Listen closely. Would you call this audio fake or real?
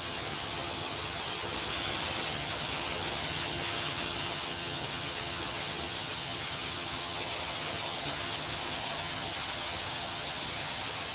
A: fake